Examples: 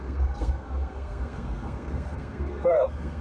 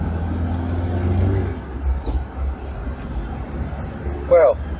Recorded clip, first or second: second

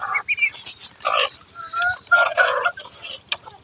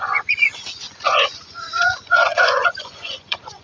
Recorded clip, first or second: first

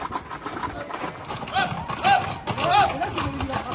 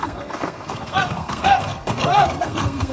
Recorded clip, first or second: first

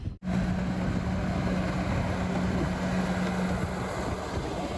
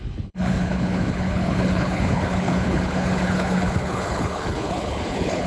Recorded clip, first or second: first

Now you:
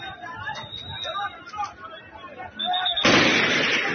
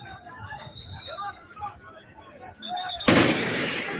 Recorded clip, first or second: first